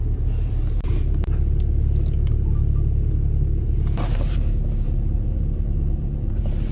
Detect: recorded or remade remade